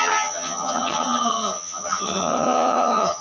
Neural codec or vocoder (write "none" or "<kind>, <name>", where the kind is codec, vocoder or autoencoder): vocoder, HiFi-GAN